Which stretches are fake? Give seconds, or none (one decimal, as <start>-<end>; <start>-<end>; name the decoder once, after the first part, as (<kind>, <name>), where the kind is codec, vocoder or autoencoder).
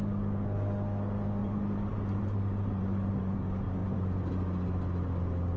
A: 1.4-3.2 (vocoder, BigVGAN v2); 3.8-4.3